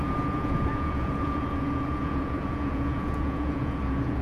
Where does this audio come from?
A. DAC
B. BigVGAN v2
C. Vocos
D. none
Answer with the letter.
C